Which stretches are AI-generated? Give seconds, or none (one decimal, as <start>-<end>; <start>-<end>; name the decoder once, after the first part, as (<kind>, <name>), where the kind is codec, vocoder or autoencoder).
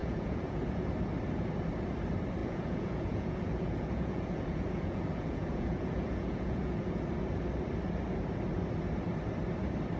0.0-0.9 (vocoder, Vocos); 2.4-7.0